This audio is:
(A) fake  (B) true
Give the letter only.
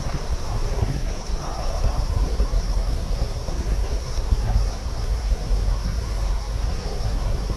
A